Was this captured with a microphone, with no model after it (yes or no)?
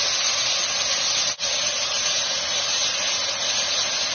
yes